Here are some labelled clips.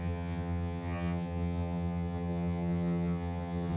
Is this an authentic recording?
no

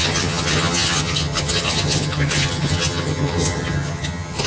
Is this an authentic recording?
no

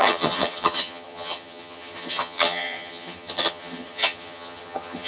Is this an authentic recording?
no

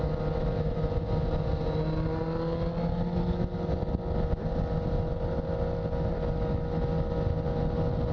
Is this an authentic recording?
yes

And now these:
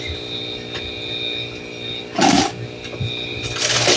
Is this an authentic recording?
yes